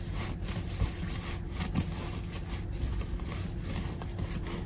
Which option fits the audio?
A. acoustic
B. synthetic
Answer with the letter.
A